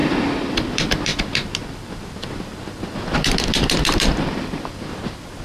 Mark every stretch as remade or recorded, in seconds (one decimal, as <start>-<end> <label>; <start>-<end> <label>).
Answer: 0.0-0.5 recorded; 0.5-5.4 remade